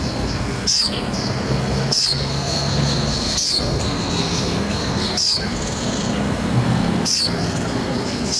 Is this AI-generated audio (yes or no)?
yes